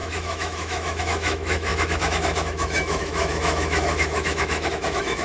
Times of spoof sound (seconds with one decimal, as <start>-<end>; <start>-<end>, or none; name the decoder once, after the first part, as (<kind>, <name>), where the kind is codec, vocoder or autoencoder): 0.0-5.2 (autoencoder, DAC-VAE)